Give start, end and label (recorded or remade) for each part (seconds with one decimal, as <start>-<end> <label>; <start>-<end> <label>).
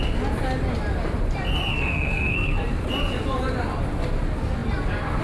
0.0-1.7 recorded; 1.7-2.6 remade; 2.6-5.2 recorded